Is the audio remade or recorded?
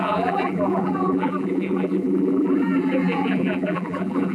remade